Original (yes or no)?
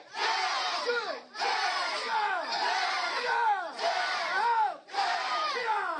no